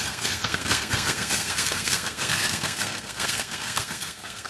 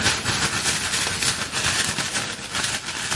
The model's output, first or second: first